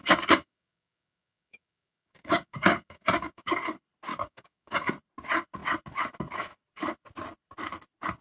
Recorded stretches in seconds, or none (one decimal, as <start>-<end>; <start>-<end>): 3.5-4.1; 4.9-8.2

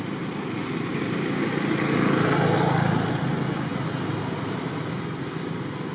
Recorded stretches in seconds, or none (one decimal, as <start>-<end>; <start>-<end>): 0.0-0.9; 1.5-5.9

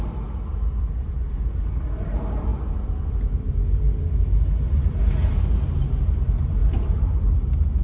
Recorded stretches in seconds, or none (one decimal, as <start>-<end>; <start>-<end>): 0.0-7.8

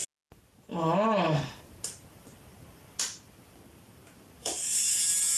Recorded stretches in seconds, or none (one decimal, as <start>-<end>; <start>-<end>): 0.0-4.4; 5.0-5.4

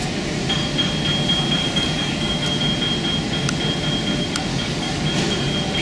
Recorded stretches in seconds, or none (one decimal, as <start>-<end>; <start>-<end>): 0.0-1.6; 2.6-4.5; 5.0-5.8